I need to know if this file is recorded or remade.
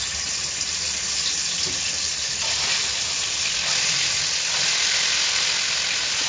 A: recorded